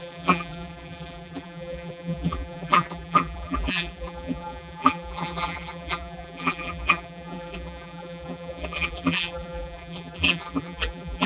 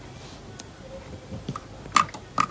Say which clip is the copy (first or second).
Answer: first